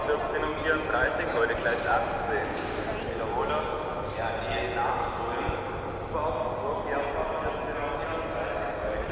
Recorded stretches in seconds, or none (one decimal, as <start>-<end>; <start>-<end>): 0.0-9.1

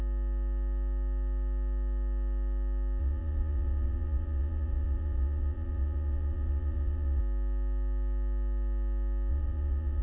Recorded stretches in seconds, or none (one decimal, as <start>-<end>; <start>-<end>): 0.0-3.0; 7.2-9.3

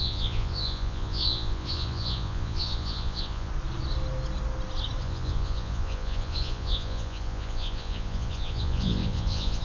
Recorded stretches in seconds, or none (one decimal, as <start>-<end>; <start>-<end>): 3.5-5.0